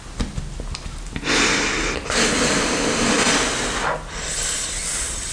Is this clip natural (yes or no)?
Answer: yes